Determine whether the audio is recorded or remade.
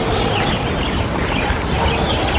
recorded